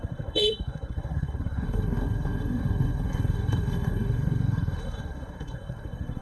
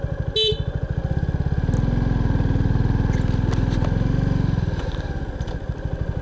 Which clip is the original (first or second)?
second